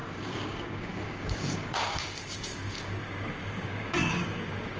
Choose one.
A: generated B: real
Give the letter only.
A